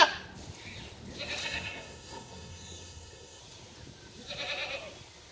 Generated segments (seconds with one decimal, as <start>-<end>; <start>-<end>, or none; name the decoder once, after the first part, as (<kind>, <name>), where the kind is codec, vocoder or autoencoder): 1.4-3.4 (codec, SNAC)